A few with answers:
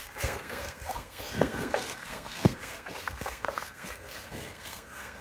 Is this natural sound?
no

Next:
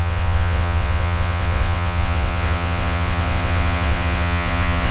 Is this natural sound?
no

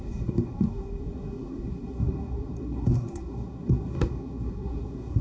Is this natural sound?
no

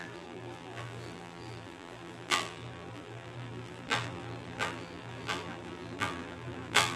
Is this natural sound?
no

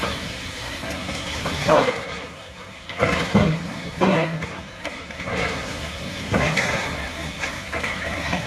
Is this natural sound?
no